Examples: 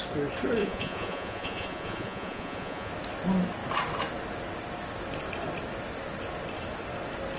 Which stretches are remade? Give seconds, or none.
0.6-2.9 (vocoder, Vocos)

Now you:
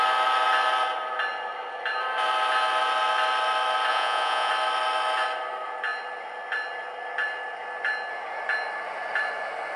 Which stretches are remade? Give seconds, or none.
3.9-4.5 (vocoder, Vocos)

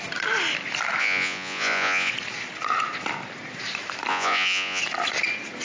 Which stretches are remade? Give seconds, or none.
1.0-2.1 (vocoder, Vocos); 4.1-4.8

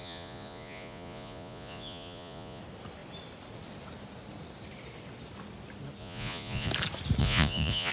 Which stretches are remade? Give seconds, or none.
0.0-2.6 (vocoder, Vocos); 6.0-6.7; 7.2-7.9